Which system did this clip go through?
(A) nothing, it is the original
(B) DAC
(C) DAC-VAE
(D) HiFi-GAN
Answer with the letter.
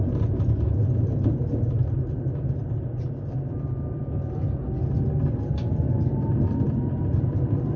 A